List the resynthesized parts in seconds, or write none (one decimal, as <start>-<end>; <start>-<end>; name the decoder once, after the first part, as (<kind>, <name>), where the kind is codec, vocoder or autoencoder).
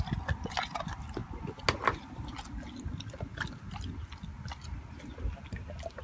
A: none